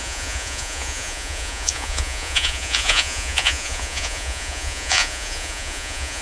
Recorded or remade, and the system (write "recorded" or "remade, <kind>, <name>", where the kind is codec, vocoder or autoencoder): remade, vocoder, Vocos